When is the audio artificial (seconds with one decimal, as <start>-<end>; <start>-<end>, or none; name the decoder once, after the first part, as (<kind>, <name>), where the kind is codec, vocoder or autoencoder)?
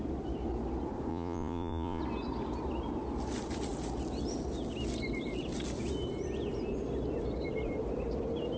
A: 1.1-2.0 (vocoder, Vocos)